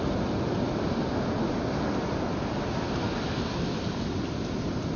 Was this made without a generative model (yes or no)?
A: yes